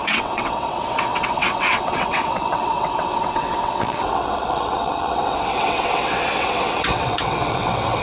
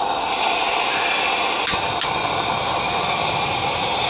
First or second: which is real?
second